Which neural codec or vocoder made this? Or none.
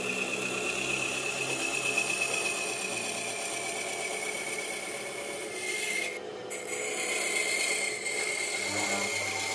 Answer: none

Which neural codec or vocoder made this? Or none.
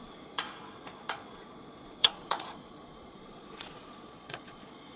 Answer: vocoder, Vocos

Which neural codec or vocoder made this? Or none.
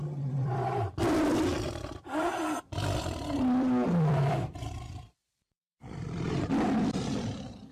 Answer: vocoder, BigVGAN v2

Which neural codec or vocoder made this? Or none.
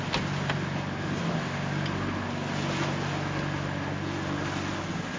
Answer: none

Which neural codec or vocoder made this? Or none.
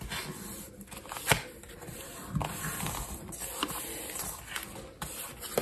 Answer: none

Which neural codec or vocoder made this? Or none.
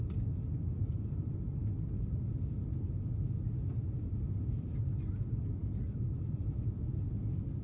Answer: none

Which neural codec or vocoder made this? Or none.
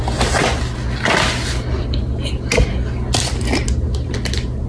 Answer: none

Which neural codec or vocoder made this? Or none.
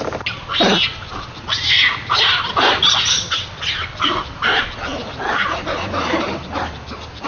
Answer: none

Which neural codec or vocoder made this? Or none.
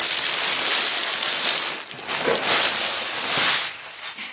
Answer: none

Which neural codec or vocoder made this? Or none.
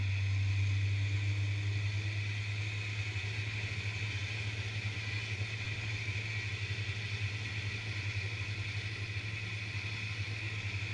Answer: none